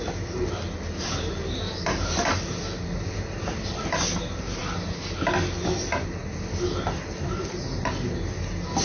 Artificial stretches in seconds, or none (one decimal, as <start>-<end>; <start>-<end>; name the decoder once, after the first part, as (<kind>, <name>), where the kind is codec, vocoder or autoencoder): none